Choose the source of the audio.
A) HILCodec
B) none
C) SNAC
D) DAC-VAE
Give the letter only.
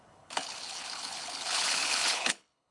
A